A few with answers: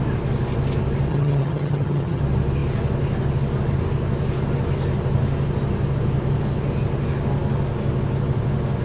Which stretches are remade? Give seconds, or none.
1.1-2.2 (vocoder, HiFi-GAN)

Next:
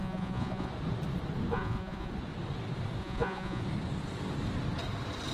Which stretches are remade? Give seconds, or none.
0.0-0.7 (vocoder, Vocos); 1.5-2.1; 3.0-3.6